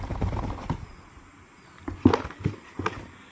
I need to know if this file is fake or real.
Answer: real